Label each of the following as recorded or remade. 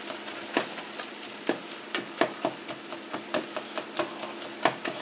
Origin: recorded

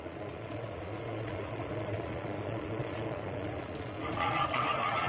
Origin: remade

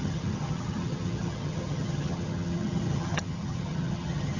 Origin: remade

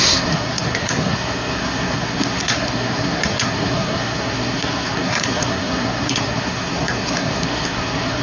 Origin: remade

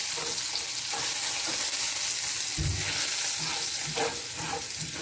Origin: recorded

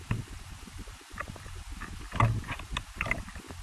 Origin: recorded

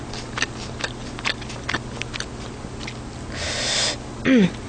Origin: recorded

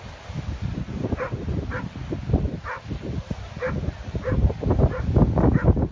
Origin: recorded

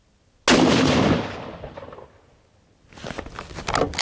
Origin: recorded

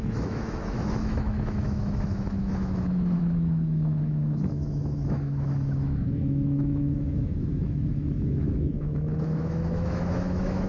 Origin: remade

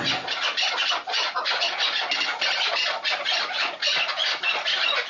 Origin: recorded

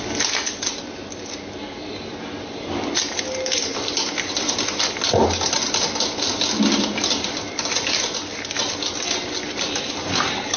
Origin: recorded